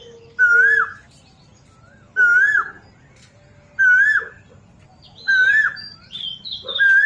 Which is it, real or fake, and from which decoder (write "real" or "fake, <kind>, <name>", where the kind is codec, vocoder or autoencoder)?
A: real